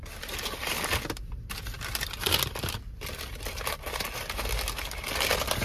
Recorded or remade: recorded